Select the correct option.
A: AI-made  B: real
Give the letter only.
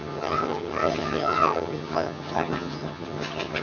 A